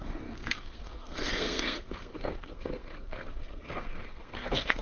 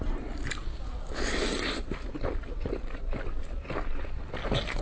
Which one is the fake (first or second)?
first